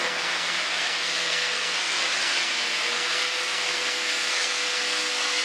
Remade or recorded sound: remade